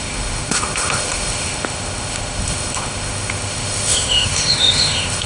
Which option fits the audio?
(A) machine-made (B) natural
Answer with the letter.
A